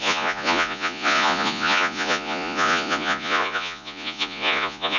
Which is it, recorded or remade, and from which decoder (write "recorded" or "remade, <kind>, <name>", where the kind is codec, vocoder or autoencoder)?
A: remade, vocoder, Vocos